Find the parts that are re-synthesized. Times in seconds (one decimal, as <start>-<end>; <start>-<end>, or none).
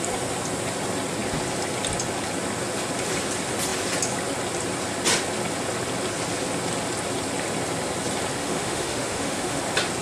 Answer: 8.4-9.6